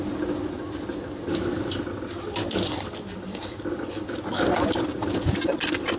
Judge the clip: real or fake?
real